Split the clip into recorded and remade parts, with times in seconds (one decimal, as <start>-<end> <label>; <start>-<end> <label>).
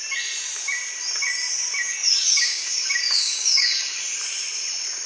0.0-2.0 recorded; 2.0-4.0 remade; 4.0-5.1 recorded